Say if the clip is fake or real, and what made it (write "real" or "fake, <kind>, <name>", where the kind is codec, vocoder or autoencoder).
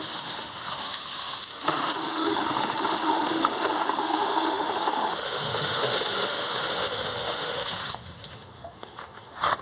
fake, autoencoder, DAC-VAE